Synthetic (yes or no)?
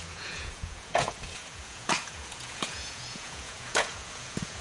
yes